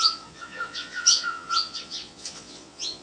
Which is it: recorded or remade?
remade